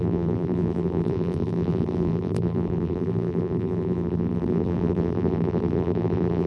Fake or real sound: fake